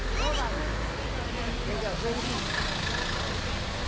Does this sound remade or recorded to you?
recorded